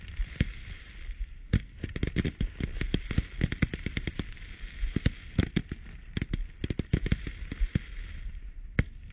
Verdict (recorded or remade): recorded